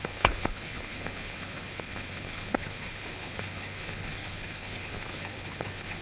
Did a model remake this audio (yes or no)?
yes